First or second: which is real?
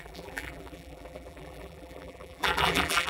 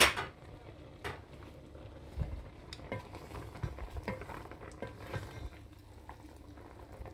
second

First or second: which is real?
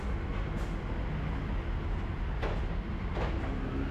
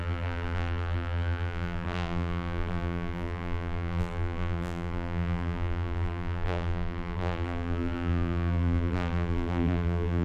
first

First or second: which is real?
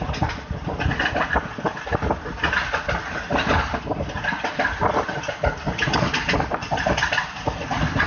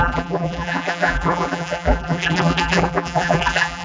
first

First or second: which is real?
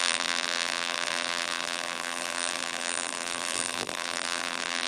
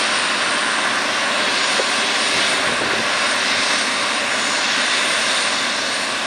second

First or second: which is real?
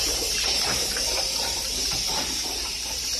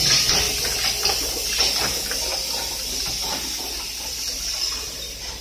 second